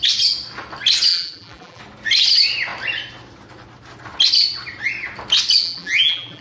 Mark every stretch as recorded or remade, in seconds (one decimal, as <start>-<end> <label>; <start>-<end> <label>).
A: 0.0-1.1 recorded; 1.1-1.8 remade; 1.8-5.6 recorded; 5.6-6.4 remade